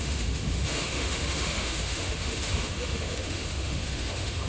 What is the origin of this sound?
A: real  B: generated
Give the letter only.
B